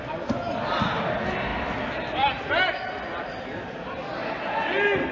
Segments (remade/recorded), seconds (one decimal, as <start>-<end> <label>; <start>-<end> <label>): 0.0-5.1 recorded